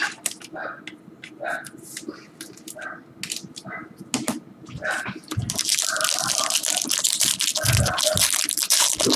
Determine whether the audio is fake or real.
real